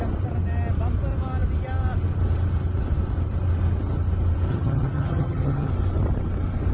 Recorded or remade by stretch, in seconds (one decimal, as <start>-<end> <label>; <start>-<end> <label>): 0.0-4.5 recorded; 4.5-5.7 remade; 5.7-6.7 recorded